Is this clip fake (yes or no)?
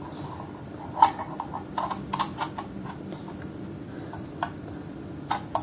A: yes